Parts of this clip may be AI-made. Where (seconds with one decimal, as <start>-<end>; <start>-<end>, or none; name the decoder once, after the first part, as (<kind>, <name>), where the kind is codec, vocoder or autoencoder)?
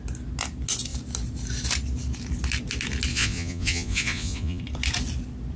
3.1-4.6 (vocoder, Vocos)